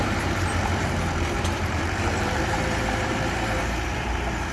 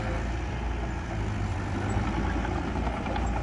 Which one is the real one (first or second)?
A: second